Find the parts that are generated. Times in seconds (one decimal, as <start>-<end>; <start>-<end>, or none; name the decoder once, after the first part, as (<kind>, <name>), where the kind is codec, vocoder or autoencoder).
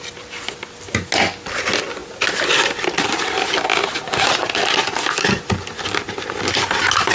none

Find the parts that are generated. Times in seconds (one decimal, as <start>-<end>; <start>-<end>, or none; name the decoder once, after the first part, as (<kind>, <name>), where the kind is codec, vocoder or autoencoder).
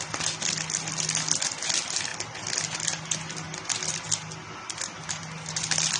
none